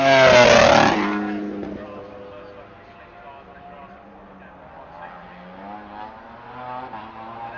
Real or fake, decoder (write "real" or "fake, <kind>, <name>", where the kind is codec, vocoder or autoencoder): real